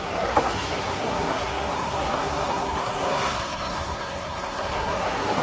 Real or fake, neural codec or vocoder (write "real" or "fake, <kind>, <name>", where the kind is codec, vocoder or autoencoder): fake, codec, SNAC